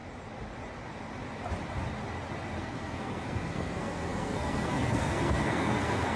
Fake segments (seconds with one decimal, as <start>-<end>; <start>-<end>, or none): 2.6-6.2